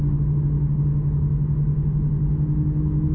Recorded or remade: recorded